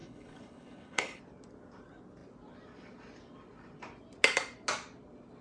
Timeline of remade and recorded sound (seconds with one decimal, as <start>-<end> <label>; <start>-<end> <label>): 0.0-1.2 remade; 1.2-5.4 recorded

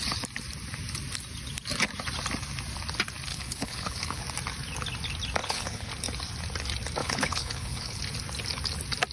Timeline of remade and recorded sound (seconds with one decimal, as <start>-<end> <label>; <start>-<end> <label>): 0.0-3.3 recorded; 3.3-4.2 remade; 4.2-5.4 recorded; 5.4-5.9 remade; 5.9-7.0 recorded; 7.0-8.0 remade; 8.0-9.1 recorded

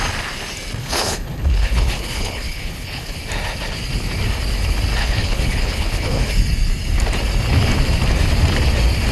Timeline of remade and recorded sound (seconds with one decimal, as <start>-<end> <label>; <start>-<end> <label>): 0.0-0.8 recorded; 0.8-3.2 remade; 3.2-5.0 recorded; 5.0-6.3 remade; 6.3-9.1 recorded